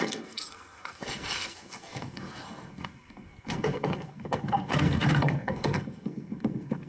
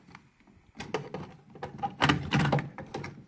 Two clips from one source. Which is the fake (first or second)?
first